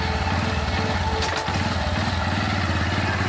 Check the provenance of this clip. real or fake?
real